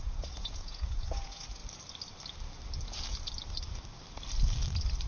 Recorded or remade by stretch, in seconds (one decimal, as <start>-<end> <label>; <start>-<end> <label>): 0.0-1.6 remade; 1.6-5.1 recorded